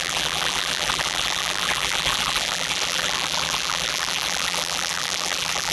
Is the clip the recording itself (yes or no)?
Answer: no